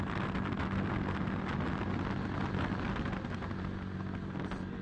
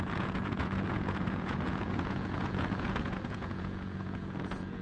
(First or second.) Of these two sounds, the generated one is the second